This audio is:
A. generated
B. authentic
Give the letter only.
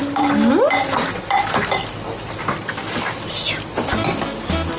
B